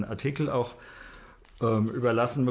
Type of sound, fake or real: real